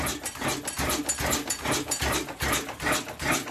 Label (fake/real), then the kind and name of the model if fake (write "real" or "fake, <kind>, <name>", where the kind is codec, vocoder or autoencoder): real